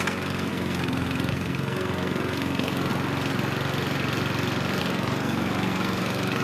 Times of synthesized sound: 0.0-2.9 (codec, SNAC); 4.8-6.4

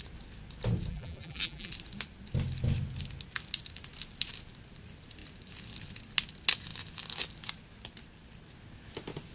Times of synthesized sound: 0.9-1.7 (vocoder, BigVGAN v2)

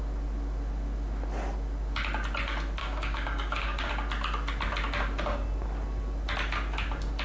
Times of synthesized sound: 2.8-3.9 (codec, DAC)

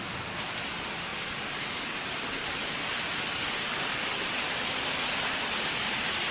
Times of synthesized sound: none

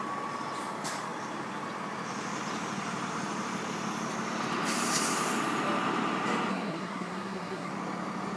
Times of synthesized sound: 6.5-7.7 (codec, SNAC)

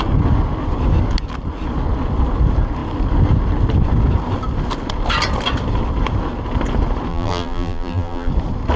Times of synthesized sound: 7.1-8.3 (vocoder, BigVGAN v2)